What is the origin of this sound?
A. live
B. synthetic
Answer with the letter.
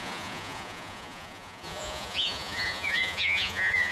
B